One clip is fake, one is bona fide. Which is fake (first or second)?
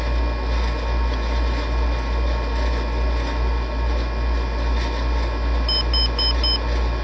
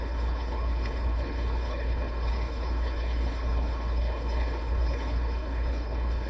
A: second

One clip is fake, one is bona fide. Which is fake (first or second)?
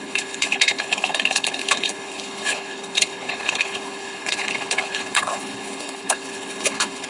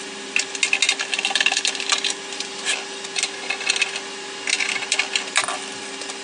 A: first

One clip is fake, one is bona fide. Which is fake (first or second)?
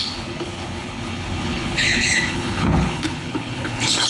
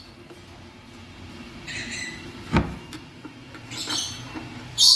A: first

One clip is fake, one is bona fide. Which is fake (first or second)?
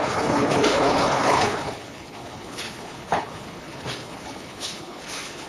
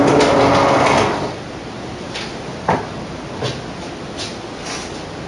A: first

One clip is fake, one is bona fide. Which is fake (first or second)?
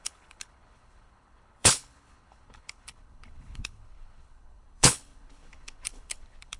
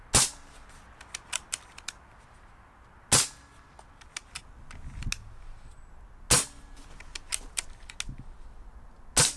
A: first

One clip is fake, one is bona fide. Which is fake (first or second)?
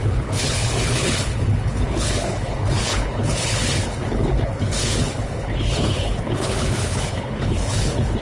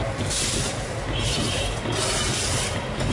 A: first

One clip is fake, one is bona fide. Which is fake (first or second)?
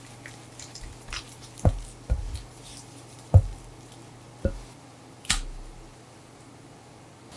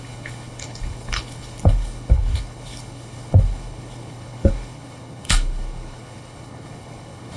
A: second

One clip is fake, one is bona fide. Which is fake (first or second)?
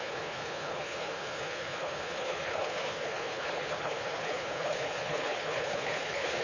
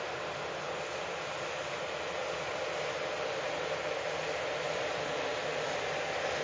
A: first